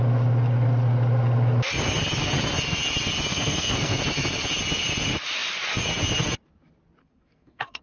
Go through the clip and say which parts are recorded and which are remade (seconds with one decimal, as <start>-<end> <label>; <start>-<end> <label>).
0.0-3.3 recorded; 3.3-4.0 remade; 4.0-7.0 recorded; 7.0-7.8 remade